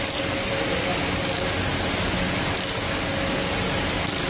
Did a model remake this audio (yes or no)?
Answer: no